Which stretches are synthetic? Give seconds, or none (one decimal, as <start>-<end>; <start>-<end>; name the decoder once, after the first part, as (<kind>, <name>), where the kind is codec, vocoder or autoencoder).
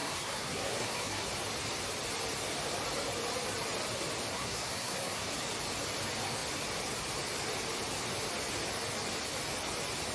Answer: 0.0-1.3 (codec, SNAC); 4.3-5.3